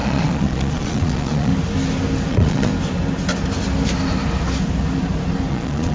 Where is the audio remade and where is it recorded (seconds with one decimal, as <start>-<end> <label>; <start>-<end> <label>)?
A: 0.0-1.5 remade; 1.5-2.3 recorded; 2.3-2.7 remade; 2.7-5.5 recorded; 5.5-5.9 remade